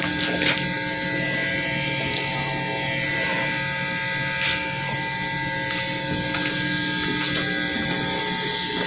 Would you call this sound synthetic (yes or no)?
no